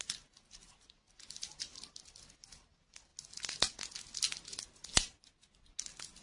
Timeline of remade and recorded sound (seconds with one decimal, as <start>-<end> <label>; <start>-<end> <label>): 0.0-6.2 recorded